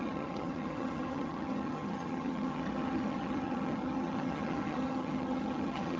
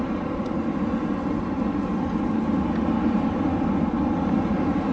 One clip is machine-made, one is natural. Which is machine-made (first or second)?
first